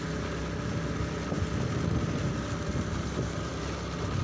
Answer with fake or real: real